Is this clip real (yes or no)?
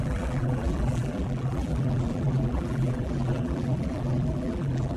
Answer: no